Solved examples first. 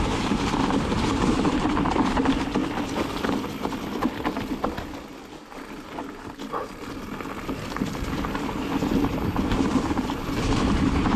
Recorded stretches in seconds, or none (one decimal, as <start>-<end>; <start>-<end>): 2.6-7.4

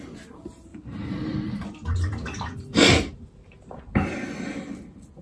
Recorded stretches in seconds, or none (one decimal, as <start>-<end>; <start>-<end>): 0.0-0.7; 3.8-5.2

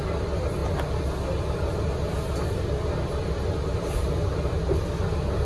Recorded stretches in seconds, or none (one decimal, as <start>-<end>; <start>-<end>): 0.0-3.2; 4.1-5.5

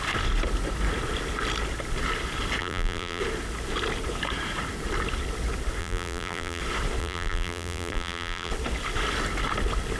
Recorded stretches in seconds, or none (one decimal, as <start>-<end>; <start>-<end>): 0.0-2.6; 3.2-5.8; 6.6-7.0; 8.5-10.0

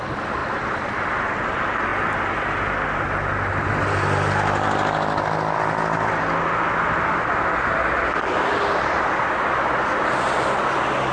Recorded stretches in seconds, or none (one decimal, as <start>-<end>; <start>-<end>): 0.0-0.4; 0.9-11.1

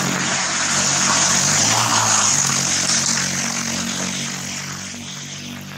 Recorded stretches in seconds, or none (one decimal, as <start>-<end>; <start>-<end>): 0.0-5.8